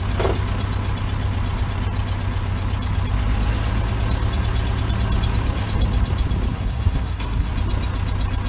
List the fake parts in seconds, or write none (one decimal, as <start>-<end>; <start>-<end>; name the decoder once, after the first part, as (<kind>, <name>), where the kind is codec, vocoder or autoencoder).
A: 6.5-7.5 (codec, SNAC)